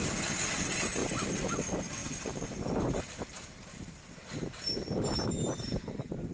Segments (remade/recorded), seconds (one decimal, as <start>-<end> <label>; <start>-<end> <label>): 0.0-1.0 recorded; 1.0-1.6 remade; 1.6-2.0 recorded; 2.0-5.8 remade; 5.8-6.3 recorded